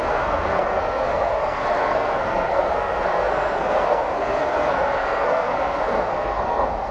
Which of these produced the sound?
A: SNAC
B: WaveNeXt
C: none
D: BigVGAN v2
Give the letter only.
A